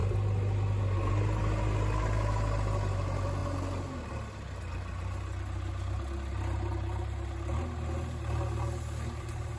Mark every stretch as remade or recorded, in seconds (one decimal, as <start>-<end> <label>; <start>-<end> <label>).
0.0-9.6 recorded